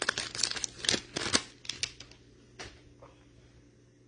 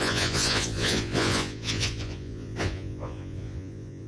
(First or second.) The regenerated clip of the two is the second